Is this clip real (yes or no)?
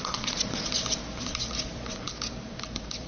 no